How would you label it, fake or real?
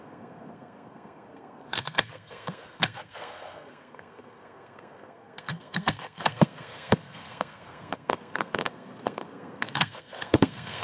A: fake